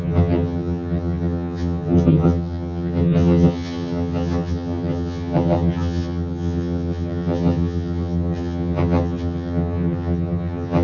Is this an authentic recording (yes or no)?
no